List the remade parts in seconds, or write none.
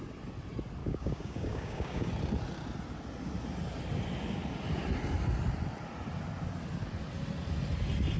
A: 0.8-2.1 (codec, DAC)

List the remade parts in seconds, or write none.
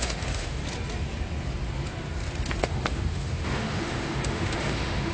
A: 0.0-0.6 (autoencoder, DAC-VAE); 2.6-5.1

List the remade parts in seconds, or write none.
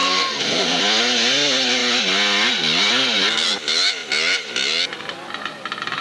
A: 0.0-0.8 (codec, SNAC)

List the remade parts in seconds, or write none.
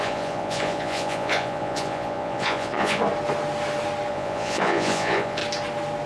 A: 0.0-3.0 (vocoder, Vocos); 4.1-5.4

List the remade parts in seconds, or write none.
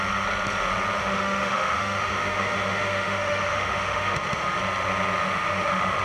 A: 1.0-4.6 (autoencoder, DAC-VAE); 5.2-6.0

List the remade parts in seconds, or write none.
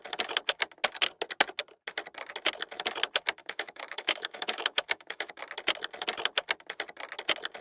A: 3.4-5.4 (autoencoder, DAC-VAE)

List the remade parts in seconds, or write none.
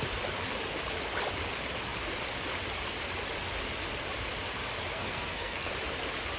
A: 4.9-5.7 (codec, SNAC)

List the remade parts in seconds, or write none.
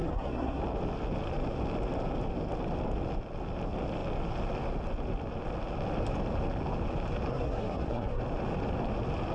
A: 0.0-0.6 (codec, SNAC); 7.3-8.2